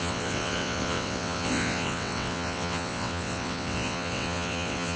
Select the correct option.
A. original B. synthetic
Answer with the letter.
B